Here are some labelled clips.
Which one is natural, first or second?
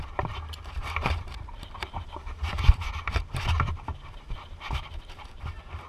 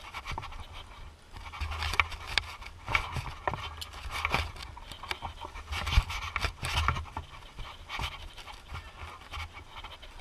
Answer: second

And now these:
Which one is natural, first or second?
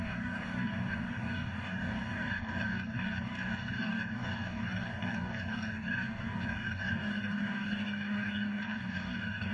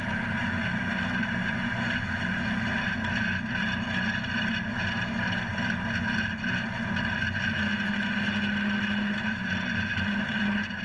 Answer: second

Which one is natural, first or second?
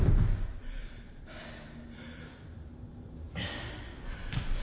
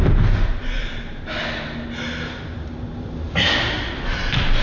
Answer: second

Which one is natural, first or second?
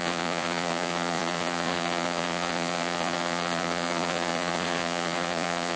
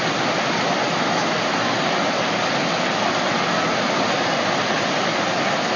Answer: second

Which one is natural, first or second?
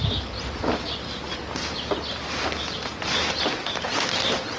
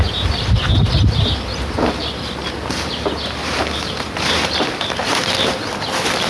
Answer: first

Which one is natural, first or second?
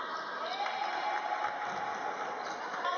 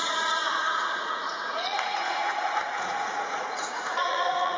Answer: first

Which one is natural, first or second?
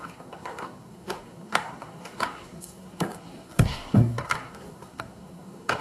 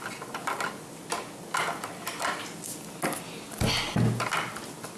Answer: second